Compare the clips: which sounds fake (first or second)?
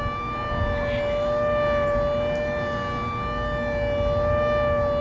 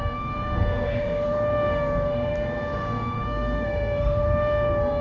second